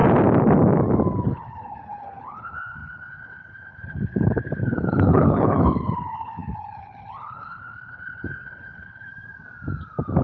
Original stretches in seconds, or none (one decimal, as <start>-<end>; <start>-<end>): 0.0-1.3; 9.1-10.2